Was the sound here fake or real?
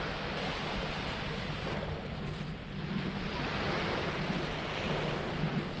real